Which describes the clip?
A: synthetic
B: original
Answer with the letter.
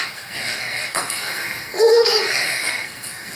A